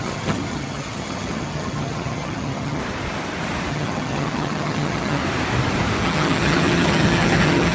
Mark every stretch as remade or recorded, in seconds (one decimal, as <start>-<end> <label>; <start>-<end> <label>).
0.0-2.8 remade; 2.8-3.7 recorded; 3.7-5.2 remade; 5.2-6.0 recorded; 6.0-7.7 remade

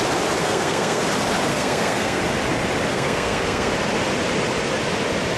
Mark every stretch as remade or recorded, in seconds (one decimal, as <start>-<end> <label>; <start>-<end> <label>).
0.0-0.4 recorded; 0.4-1.0 remade; 1.0-1.5 recorded; 1.5-2.2 remade; 2.2-2.9 recorded; 2.9-3.7 remade; 3.7-5.4 recorded